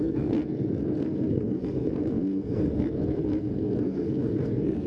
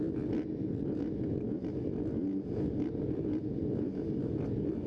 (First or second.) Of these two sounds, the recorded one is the second